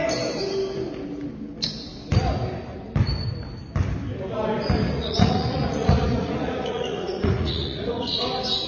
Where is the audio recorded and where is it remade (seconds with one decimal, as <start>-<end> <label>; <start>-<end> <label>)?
0.0-4.9 recorded; 4.9-8.2 remade; 8.2-8.7 recorded